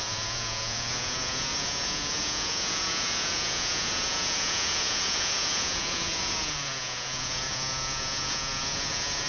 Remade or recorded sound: remade